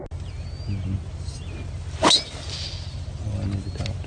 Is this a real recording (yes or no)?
yes